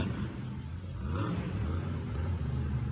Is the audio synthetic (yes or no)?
no